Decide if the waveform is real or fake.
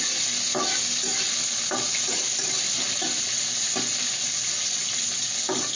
real